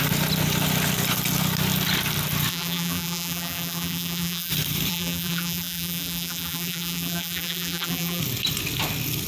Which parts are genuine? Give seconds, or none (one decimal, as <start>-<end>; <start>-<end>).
0.0-2.5; 4.5-4.9; 8.2-9.3